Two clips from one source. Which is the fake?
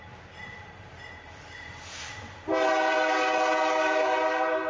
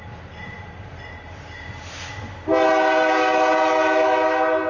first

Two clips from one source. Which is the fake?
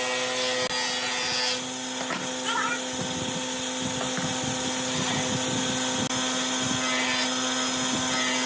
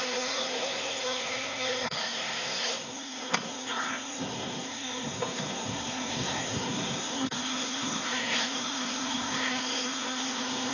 second